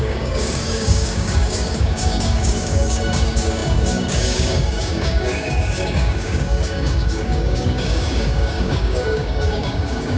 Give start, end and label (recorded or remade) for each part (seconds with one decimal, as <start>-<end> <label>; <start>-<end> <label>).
0.0-10.2 remade